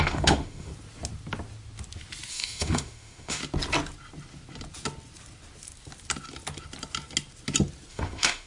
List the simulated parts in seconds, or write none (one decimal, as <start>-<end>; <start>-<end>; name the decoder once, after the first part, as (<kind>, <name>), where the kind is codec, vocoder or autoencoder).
0.0-0.7 (autoencoder, DAC-VAE); 2.3-3.4; 7.9-8.5